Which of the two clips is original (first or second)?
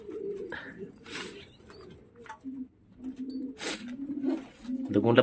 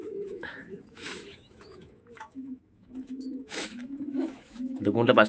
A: first